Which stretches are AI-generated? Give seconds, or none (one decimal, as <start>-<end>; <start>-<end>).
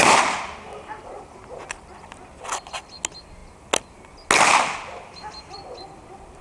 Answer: none